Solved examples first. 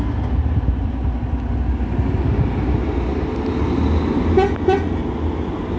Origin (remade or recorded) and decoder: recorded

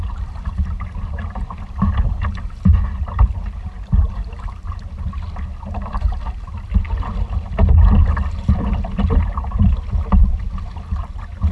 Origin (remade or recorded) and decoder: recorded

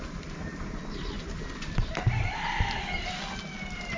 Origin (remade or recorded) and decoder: recorded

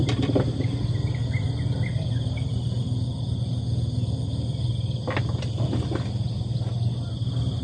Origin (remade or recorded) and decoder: recorded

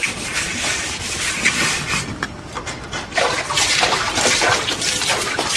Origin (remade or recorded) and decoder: remade, vocoder, BigVGAN v2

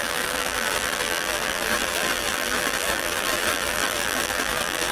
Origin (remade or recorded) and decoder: remade, vocoder, BigVGAN v2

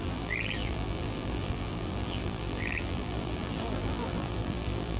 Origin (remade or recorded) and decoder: remade, vocoder, BigVGAN v2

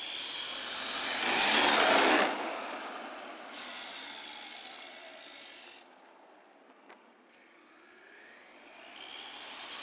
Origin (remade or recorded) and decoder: recorded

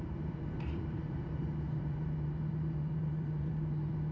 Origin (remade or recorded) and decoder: remade, vocoder, BigVGAN v2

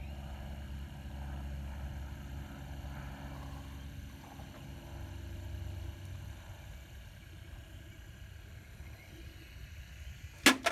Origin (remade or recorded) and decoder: recorded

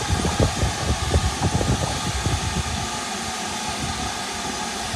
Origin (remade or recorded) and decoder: recorded